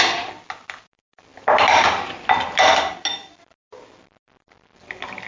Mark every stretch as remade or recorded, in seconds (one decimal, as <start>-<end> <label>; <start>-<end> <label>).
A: 0.0-5.3 recorded